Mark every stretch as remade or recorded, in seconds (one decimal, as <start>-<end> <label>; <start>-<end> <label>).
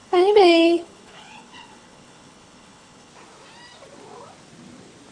0.0-3.1 remade; 3.1-5.1 recorded